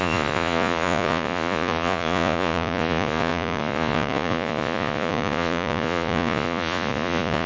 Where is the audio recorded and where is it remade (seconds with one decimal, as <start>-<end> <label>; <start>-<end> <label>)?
0.0-7.5 remade